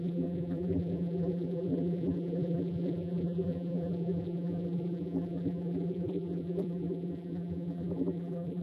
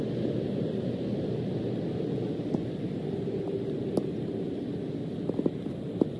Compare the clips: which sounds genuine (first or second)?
second